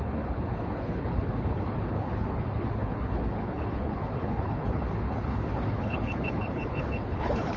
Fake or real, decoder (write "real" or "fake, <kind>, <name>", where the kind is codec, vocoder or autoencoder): fake, codec, HILCodec